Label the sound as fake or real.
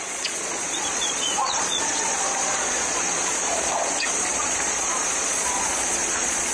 fake